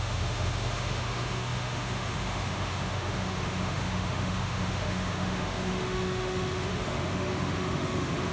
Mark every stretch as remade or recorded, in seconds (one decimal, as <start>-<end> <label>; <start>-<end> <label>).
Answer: 0.0-8.3 remade